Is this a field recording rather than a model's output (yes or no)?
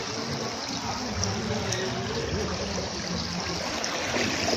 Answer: yes